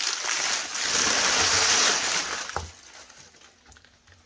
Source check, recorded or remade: recorded